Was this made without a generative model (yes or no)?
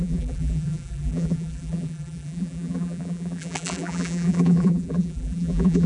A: no